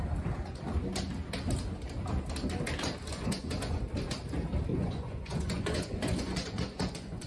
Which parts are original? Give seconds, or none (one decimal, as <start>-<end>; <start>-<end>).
0.0-3.1; 3.8-4.7